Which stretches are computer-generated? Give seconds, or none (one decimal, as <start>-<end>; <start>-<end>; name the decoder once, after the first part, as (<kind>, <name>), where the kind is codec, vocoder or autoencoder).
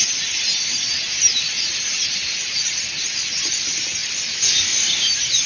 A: none